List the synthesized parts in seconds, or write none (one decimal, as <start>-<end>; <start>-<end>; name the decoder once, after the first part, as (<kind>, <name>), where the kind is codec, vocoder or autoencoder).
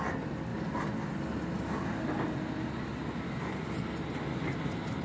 none